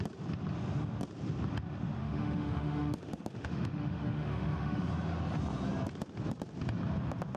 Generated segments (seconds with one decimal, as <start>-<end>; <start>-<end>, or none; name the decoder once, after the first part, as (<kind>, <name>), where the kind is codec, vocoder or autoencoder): 2.0-4.9 (autoencoder, DAC-VAE)